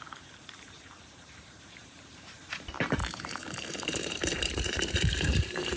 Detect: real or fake fake